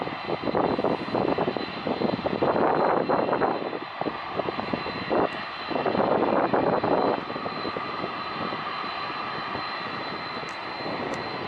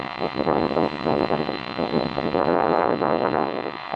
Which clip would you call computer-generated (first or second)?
second